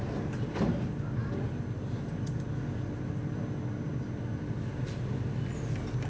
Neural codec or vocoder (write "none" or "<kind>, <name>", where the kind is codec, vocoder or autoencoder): none